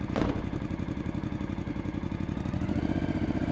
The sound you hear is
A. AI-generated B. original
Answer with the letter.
A